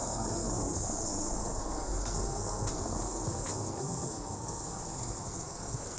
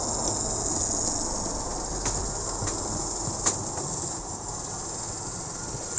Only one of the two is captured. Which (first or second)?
second